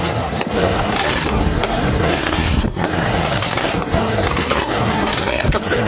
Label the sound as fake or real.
fake